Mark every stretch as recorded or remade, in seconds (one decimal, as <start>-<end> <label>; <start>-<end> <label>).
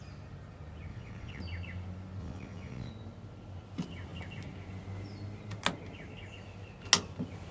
0.0-0.9 recorded; 0.9-1.4 remade; 1.4-2.2 recorded; 2.2-2.9 remade; 2.9-7.5 recorded